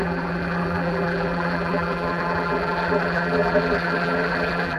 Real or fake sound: fake